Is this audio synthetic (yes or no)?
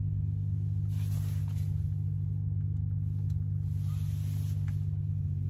no